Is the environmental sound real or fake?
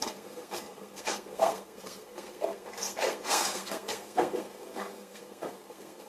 fake